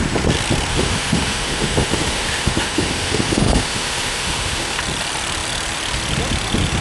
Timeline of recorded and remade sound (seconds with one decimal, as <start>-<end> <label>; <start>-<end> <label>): 0.0-0.7 recorded; 0.7-4.8 remade; 4.8-6.8 recorded

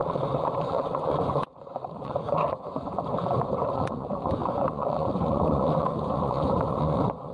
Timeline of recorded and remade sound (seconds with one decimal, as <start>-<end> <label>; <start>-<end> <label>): 0.0-7.3 remade

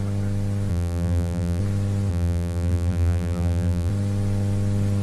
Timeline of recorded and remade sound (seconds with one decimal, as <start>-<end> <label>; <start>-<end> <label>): 0.0-0.7 recorded; 0.7-1.6 remade; 1.6-2.1 recorded; 2.1-3.9 remade; 3.9-5.0 recorded

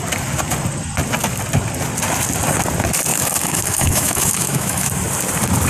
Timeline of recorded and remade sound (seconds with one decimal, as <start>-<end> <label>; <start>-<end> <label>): 0.0-3.1 recorded; 3.1-4.9 remade; 4.9-5.7 recorded

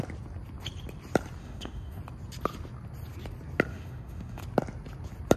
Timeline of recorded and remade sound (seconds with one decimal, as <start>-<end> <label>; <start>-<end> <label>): 0.0-1.4 recorded; 1.4-2.0 remade; 2.0-3.7 recorded; 3.7-4.4 remade; 4.4-5.4 recorded

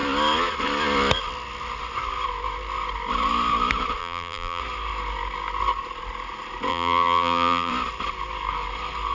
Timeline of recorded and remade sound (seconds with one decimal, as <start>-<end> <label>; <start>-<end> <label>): 0.0-4.0 recorded; 4.0-4.6 remade; 4.6-6.7 recorded; 6.7-7.7 remade; 7.7-9.1 recorded

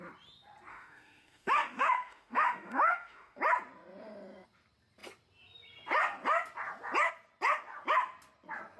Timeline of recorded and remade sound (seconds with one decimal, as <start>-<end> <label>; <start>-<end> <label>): 0.0-0.7 recorded; 0.7-3.4 remade; 3.4-8.8 recorded